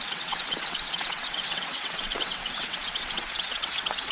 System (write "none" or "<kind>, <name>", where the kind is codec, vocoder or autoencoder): vocoder, WaveNeXt